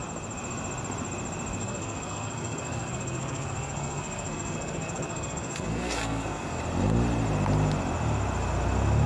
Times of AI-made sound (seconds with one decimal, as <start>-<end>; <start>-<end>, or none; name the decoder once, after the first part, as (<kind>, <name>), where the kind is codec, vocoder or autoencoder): 1.6-6.6 (codec, SNAC)